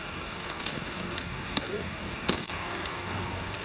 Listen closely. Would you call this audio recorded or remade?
remade